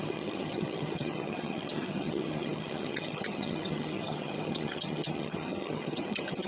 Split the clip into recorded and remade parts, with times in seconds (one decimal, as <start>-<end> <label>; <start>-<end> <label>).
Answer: 0.0-6.5 remade